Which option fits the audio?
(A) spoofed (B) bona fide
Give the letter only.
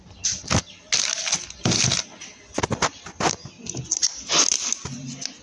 B